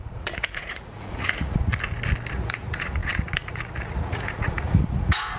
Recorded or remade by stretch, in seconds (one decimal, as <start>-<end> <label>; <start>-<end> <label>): 0.0-1.7 remade; 1.7-2.3 recorded; 2.3-5.4 remade